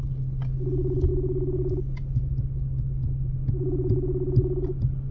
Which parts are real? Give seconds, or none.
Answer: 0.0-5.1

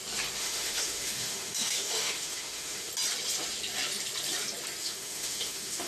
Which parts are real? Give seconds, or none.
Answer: 0.0-0.4; 2.9-4.8

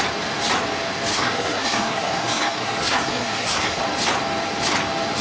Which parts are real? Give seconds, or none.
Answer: 0.0-1.1; 3.8-5.2

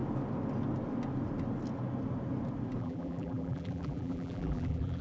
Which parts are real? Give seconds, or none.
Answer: 0.0-2.8

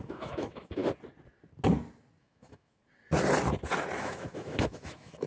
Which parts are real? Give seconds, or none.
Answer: 0.8-2.2; 2.8-4.0

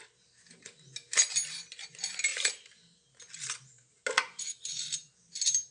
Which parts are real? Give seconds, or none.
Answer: 0.0-5.7